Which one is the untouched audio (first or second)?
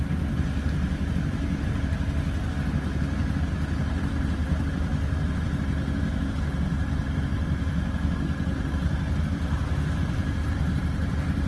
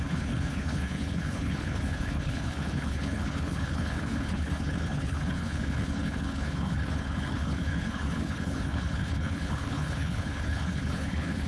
first